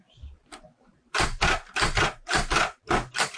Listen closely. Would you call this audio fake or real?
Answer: real